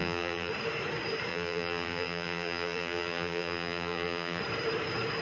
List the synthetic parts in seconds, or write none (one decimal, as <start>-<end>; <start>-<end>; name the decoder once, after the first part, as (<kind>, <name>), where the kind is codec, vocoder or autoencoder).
0.0-0.5 (vocoder, BigVGAN v2); 1.3-4.4